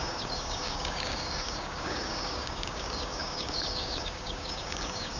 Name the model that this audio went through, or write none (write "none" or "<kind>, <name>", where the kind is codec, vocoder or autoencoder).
codec, DAC